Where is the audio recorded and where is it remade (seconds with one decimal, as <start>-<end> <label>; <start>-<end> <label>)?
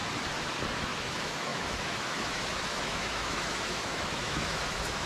0.0-0.8 recorded; 0.8-5.1 remade